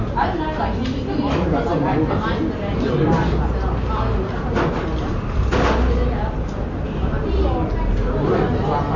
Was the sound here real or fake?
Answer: real